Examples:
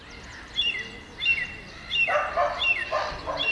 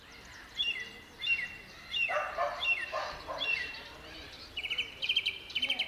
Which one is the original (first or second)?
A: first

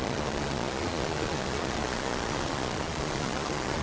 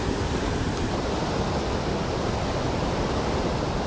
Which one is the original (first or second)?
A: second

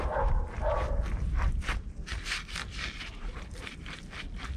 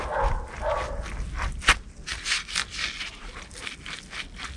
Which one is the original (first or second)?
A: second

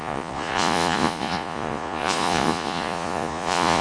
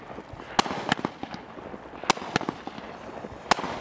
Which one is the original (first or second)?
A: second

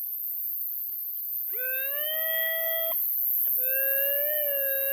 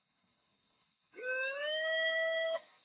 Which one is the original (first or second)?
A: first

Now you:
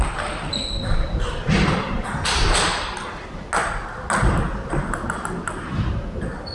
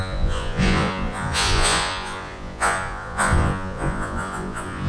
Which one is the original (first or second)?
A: first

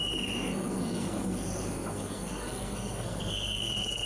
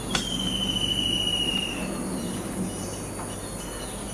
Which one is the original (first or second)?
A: second